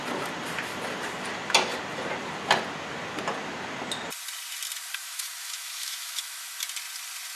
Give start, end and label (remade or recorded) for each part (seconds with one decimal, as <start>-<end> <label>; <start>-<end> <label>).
0.0-5.0 recorded; 5.0-6.4 remade; 6.4-7.4 recorded